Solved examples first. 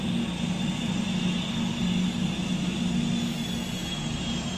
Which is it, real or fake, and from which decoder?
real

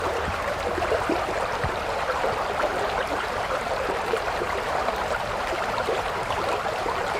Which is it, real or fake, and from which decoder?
fake, vocoder, BigVGAN v2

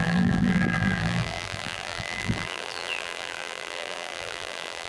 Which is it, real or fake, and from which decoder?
fake, vocoder, BigVGAN v2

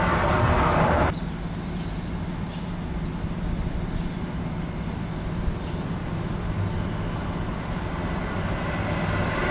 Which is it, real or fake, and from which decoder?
real